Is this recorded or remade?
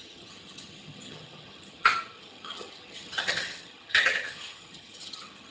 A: remade